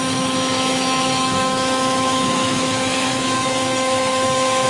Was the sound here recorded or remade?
remade